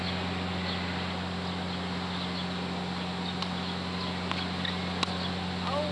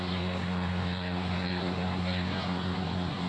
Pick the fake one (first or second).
second